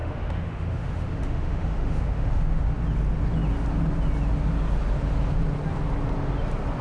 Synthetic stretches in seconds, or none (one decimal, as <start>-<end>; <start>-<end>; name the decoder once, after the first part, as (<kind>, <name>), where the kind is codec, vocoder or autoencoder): 0.0-2.7 (autoencoder, DAC-VAE)